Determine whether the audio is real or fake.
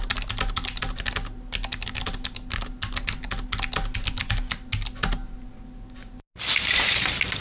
real